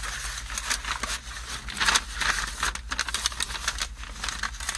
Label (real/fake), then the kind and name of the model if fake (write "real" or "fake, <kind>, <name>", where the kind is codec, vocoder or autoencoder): real